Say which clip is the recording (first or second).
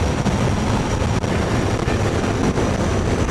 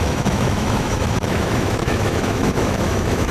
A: first